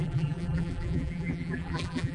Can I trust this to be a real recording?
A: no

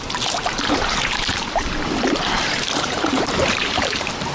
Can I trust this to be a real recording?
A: no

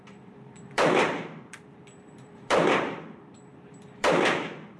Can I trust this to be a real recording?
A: no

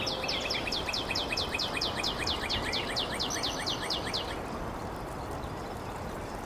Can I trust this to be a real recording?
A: yes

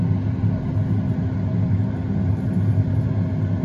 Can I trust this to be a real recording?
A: yes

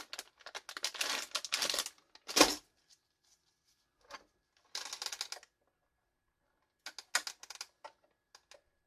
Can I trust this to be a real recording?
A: yes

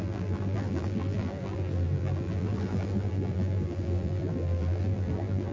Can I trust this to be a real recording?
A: no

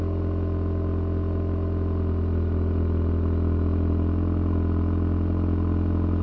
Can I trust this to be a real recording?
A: yes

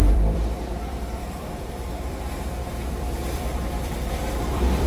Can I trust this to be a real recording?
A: no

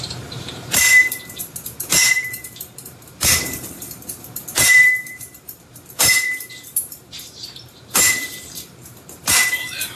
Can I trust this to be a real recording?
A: no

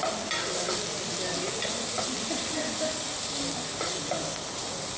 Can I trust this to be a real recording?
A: yes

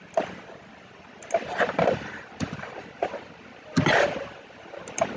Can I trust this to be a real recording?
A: yes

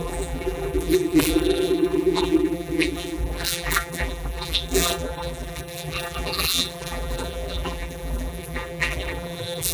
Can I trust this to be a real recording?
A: no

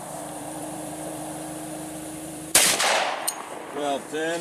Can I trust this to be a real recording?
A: no